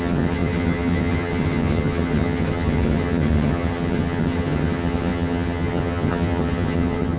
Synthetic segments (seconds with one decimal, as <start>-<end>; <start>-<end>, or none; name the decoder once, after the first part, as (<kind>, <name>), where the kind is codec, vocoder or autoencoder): 0.0-7.2 (vocoder, HiFi-GAN)